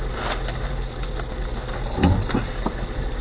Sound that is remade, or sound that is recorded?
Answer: recorded